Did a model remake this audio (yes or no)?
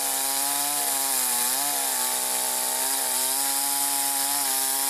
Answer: no